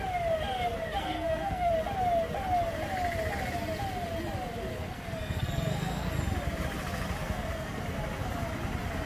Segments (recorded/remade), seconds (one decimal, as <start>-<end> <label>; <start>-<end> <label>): 0.0-0.8 recorded; 0.8-1.7 remade; 1.7-4.7 recorded; 4.7-6.1 remade; 6.1-7.2 recorded; 7.2-7.8 remade; 7.8-9.1 recorded